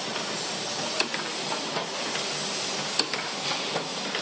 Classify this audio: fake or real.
real